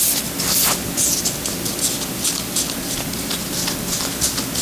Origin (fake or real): real